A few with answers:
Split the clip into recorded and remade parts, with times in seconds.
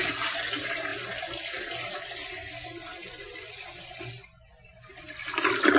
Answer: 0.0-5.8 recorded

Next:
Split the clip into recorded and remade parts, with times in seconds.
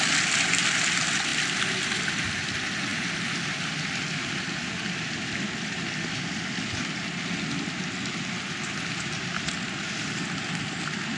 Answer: 0.0-11.2 recorded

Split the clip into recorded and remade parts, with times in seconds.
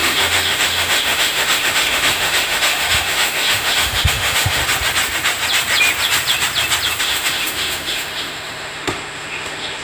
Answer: 0.0-4.6 remade; 4.6-7.0 recorded; 7.0-9.8 remade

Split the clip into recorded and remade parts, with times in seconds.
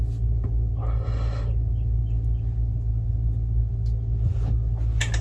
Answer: 0.0-5.2 recorded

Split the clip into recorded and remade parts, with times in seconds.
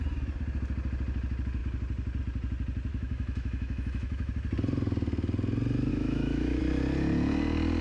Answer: 0.0-2.9 recorded; 2.9-4.3 remade; 4.3-5.9 recorded; 5.9-6.6 remade; 6.6-7.8 recorded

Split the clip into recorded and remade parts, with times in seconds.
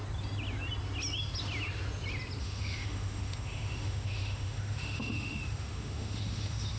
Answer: 0.0-2.4 recorded; 2.4-6.8 remade